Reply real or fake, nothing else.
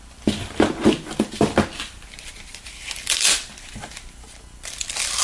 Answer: real